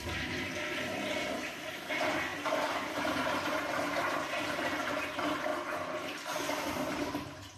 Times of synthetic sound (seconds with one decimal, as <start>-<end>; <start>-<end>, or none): 0.0-5.5; 6.7-7.6